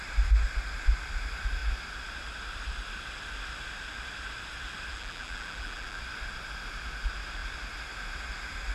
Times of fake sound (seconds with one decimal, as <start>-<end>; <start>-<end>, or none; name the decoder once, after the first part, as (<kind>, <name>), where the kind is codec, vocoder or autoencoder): 4.9-6.0 (vocoder, BigVGAN v2)